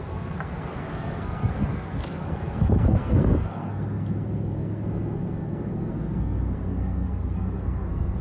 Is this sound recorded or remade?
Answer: remade